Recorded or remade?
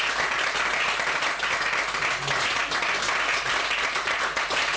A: recorded